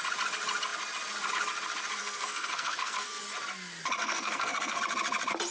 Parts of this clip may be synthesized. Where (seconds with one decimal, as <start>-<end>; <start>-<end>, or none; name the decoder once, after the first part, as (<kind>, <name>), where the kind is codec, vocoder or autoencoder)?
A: 2.0-3.2 (codec, SNAC); 4.0-4.8